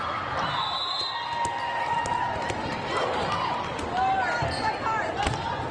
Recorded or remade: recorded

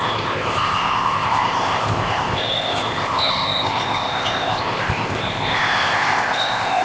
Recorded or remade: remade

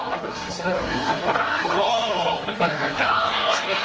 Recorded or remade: remade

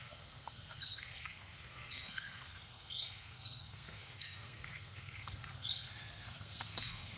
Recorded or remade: remade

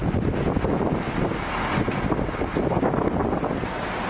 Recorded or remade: recorded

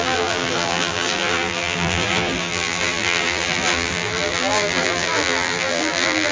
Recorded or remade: remade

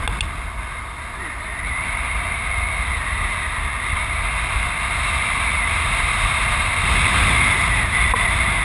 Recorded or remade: recorded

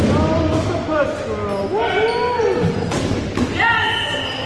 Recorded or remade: recorded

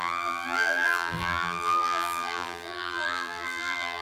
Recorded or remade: remade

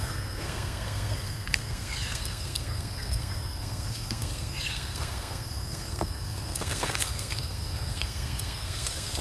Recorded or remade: remade